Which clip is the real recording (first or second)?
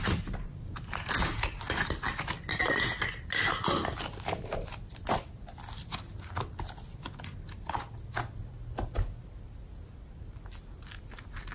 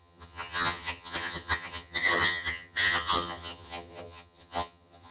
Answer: first